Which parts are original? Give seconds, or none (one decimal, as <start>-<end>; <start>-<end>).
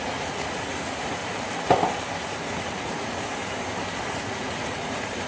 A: 1.2-2.2; 3.4-4.0